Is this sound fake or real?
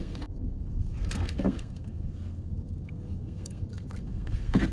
fake